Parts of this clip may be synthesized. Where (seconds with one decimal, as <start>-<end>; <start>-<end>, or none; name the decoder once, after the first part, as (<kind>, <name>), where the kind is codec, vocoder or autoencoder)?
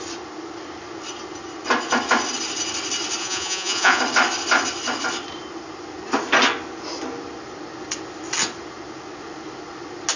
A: 3.2-4.0 (vocoder, Vocos)